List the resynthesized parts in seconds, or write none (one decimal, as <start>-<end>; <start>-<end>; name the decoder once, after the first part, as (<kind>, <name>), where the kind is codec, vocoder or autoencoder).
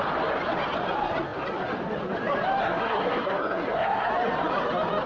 2.6-4.1 (codec, SNAC)